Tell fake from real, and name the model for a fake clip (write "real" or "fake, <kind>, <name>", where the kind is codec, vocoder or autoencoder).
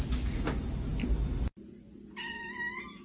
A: real